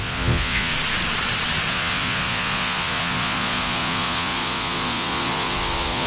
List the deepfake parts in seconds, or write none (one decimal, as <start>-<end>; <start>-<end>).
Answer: 0.0-0.7; 1.7-6.1